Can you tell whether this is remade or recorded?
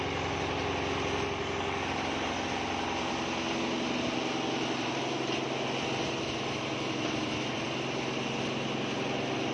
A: recorded